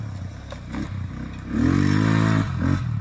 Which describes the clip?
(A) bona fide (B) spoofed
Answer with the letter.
A